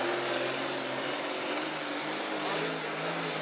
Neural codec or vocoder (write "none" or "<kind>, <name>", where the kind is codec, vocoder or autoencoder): none